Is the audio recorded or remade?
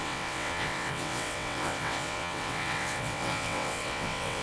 remade